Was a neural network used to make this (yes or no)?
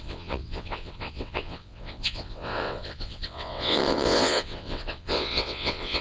yes